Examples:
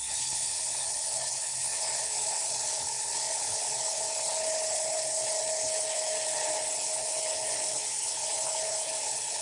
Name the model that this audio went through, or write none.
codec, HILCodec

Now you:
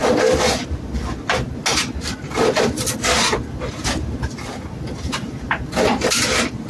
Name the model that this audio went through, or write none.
none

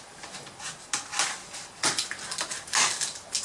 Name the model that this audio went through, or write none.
none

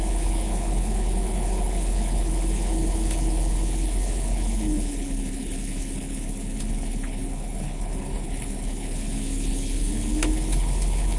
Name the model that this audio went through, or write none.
codec, HILCodec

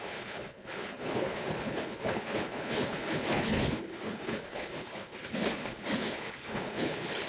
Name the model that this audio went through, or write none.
codec, HILCodec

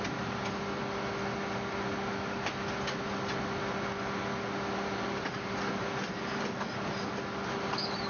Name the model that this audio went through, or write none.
none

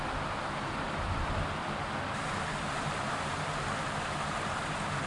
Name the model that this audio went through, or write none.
none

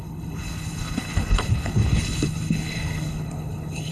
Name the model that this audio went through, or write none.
codec, HILCodec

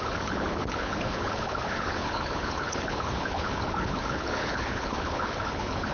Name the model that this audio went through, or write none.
codec, HILCodec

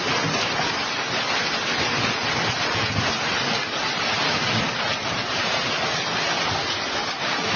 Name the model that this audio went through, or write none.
none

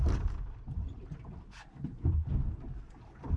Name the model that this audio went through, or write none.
none